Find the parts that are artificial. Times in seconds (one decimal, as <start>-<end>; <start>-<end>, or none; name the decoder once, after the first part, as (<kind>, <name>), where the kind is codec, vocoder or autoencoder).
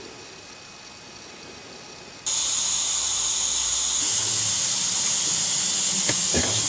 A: 4.2-4.9 (vocoder, BigVGAN v2)